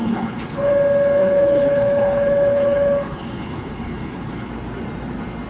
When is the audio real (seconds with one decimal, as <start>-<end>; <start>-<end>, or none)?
0.7-1.2; 4.5-5.5

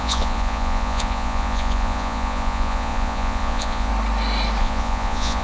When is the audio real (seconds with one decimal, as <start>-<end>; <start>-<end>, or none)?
3.9-4.6

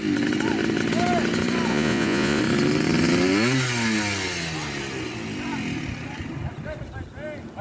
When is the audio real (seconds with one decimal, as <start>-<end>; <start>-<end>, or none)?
0.0-1.7; 2.4-7.6

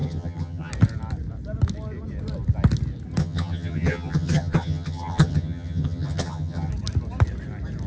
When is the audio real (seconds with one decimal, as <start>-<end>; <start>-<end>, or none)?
0.7-3.2; 6.7-7.9

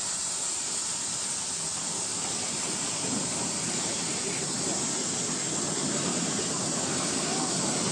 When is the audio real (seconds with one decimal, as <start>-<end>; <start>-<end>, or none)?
0.0-2.1; 4.5-6.1; 7.0-7.9

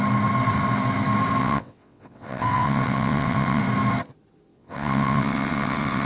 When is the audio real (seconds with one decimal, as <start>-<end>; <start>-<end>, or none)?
0.0-1.4; 3.6-4.5